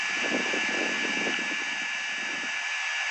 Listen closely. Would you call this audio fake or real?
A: real